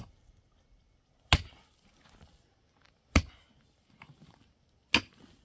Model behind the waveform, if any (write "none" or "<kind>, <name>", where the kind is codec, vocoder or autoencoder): none